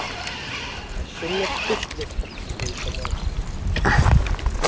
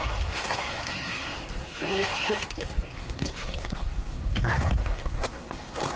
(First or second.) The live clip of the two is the first